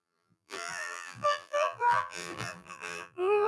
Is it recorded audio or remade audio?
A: remade